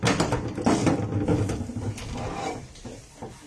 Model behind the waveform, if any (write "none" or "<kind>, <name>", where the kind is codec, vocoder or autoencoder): none